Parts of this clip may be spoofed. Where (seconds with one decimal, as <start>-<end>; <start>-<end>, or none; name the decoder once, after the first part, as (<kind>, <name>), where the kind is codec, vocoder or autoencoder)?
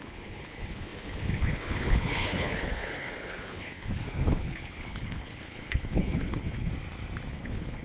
0.0-6.7 (codec, HILCodec); 7.3-7.8